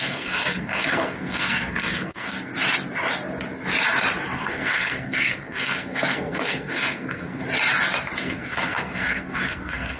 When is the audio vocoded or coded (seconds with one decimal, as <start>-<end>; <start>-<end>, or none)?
0.0-2.5; 4.4-7.4; 8.2-10.0